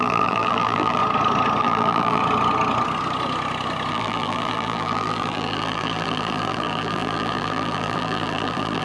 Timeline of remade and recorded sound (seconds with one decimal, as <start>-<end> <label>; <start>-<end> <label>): 0.0-1.0 remade; 1.0-1.6 recorded; 1.6-2.2 remade; 2.2-3.9 recorded; 3.9-8.8 remade